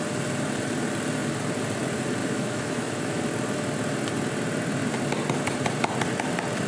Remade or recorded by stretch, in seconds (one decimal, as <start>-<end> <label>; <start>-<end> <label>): 0.0-2.2 recorded; 2.2-3.2 remade; 3.2-6.7 recorded